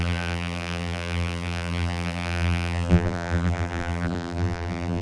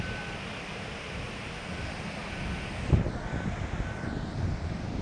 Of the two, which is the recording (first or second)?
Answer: second